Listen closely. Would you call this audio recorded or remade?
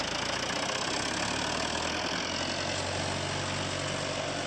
recorded